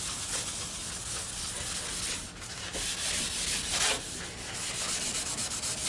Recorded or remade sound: recorded